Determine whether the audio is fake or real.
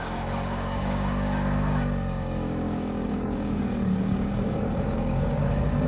fake